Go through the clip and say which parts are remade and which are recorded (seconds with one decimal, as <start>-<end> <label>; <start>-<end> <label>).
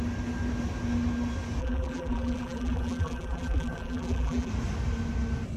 0.0-1.6 recorded; 1.6-4.5 remade; 4.5-5.6 recorded